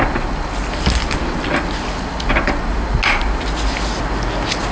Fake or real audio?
real